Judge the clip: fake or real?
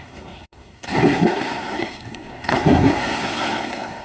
fake